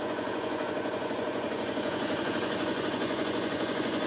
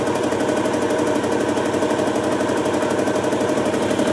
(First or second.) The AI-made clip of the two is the first